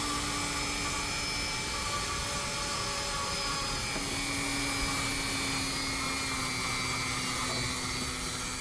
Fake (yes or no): no